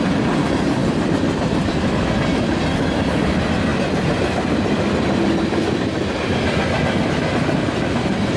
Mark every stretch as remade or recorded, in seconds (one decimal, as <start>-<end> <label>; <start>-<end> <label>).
0.0-8.4 recorded